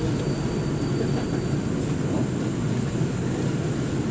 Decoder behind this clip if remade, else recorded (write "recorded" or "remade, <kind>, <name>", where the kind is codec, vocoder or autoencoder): recorded